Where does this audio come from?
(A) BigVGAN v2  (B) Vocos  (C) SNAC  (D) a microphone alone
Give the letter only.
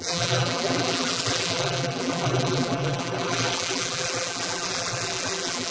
A